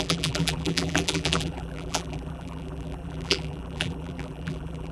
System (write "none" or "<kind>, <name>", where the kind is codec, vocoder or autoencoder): vocoder, BigVGAN v2